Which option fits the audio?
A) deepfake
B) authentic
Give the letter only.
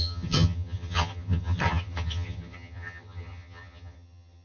A